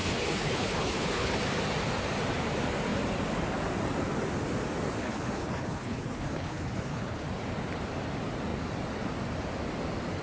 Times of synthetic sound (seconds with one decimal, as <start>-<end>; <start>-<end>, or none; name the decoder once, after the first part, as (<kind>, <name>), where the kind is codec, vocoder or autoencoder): 0.0-1.4 (codec, HILCodec); 5.0-7.2